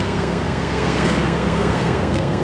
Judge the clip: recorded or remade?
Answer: remade